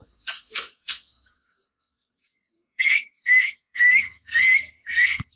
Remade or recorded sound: remade